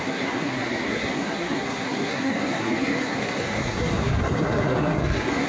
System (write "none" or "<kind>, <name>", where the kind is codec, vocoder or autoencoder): codec, SNAC